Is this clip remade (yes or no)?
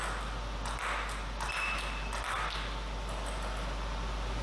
no